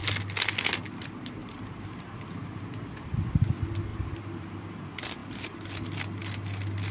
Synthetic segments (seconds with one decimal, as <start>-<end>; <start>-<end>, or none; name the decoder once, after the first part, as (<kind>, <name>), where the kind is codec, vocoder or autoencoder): 1.4-2.7 (vocoder, BigVGAN v2); 3.9-4.6; 5.2-5.7